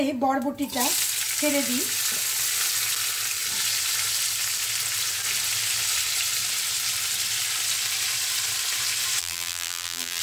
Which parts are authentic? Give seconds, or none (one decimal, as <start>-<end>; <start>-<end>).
0.0-9.2